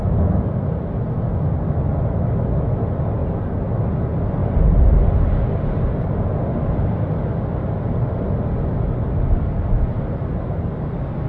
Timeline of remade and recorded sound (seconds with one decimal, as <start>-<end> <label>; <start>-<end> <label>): 0.0-11.3 recorded